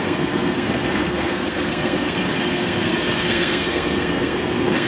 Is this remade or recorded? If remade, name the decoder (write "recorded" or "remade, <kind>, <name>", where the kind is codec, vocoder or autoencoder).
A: remade, codec, SNAC